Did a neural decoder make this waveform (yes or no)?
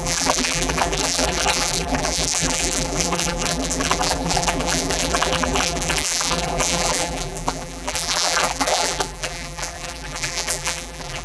yes